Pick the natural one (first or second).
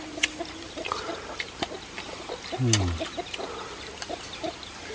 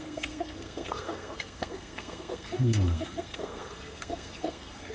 first